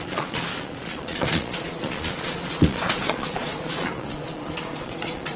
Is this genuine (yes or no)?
no